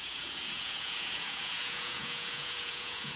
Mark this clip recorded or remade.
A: remade